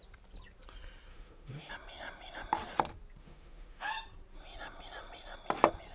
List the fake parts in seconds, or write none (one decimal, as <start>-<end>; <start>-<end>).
1.1-1.7; 3.2-3.9